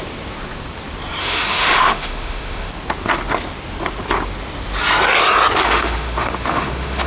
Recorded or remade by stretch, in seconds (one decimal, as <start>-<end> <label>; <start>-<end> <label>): 0.0-1.2 recorded; 1.2-2.7 remade; 2.7-5.6 recorded; 5.6-7.1 remade